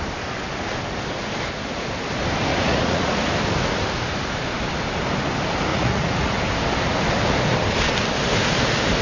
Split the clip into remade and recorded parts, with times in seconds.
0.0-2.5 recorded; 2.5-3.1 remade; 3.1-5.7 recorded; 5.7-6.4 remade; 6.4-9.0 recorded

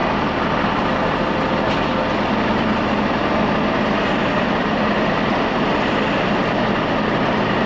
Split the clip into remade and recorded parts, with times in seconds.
0.0-7.7 recorded

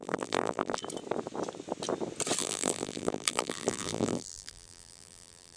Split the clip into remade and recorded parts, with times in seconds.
0.0-0.8 remade; 0.8-2.4 recorded; 2.4-5.6 remade